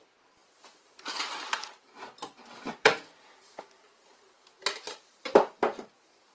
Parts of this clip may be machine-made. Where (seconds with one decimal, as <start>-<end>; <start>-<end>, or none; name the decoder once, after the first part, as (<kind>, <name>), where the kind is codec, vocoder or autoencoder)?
2.5-3.7 (vocoder, BigVGAN v2)

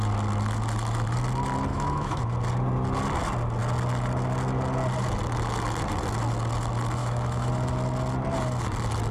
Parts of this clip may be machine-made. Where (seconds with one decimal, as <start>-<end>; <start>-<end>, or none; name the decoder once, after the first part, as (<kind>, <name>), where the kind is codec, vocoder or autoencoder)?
1.7-2.2 (autoencoder, DAC-VAE); 7.0-7.5

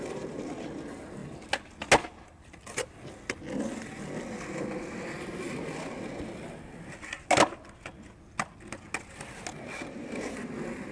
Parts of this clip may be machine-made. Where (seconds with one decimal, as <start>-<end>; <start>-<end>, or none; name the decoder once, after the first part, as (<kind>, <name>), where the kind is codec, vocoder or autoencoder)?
none

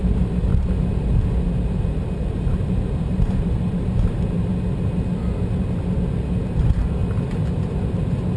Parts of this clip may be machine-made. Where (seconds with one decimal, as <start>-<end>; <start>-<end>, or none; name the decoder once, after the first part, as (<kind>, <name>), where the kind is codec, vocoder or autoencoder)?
0.0-0.5 (vocoder, BigVGAN v2); 2.3-4.5; 6.4-7.0

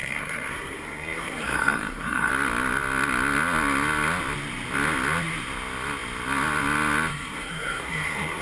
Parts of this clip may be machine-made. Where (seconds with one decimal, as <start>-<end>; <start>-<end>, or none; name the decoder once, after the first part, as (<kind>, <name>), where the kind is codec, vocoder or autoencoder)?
0.0-2.3 (codec, SNAC); 7.1-8.4

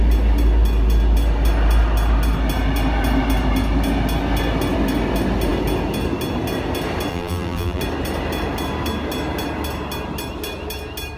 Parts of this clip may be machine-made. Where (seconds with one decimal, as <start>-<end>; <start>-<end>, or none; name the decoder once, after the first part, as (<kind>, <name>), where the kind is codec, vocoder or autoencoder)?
7.1-7.8 (vocoder, BigVGAN v2)

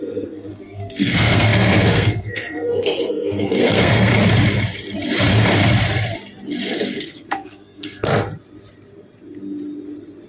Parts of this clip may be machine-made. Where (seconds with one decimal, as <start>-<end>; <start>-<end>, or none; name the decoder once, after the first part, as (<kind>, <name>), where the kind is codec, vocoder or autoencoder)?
0.0-4.1 (codec, SNAC); 6.7-8.1